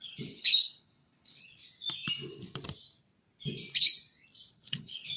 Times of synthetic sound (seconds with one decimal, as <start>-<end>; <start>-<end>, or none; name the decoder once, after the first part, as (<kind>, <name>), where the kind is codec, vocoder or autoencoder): 0.0-1.6 (codec, HILCodec); 4.5-5.2